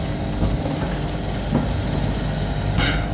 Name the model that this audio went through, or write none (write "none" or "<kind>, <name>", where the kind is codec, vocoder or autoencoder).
none